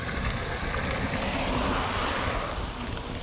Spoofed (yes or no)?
no